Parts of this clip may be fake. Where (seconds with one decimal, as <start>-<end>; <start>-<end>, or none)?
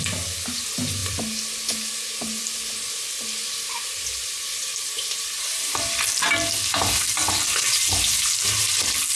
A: none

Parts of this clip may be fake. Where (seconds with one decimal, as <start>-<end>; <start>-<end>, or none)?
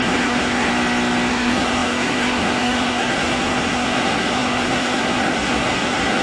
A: 0.0-0.7; 1.3-6.2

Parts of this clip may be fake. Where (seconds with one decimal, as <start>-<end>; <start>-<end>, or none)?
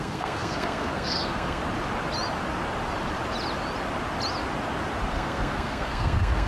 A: 0.0-1.6; 5.1-6.5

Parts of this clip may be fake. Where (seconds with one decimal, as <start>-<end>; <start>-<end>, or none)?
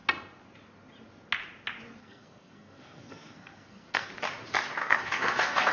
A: 2.0-4.1; 4.8-5.7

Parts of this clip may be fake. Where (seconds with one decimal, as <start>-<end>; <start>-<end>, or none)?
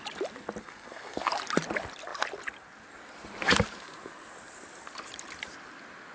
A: 0.6-1.3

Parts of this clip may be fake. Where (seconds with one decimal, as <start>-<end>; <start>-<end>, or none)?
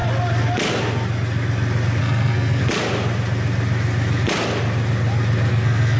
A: 2.0-2.6; 5.5-6.0